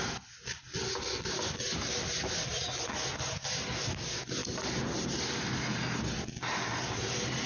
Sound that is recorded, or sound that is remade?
recorded